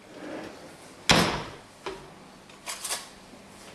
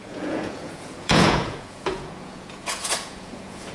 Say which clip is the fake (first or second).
second